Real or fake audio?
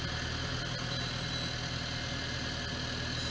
real